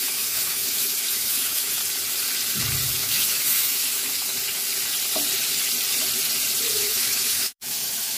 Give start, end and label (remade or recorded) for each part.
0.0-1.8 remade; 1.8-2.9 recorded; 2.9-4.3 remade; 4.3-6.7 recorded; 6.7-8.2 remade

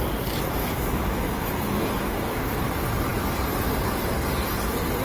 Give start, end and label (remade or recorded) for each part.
0.0-0.6 recorded; 0.6-2.6 remade; 2.6-5.0 recorded

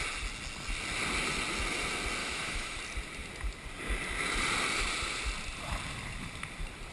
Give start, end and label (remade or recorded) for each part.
0.0-2.2 recorded; 2.2-2.8 remade; 2.8-6.9 recorded

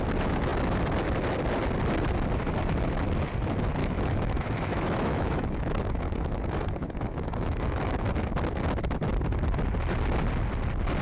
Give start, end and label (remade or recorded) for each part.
0.0-3.8 recorded; 3.8-8.2 remade; 8.2-11.0 recorded

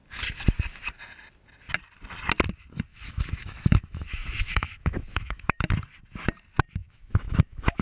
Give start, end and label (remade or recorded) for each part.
0.0-2.9 recorded; 2.9-5.7 remade; 5.7-6.8 recorded; 6.8-7.8 remade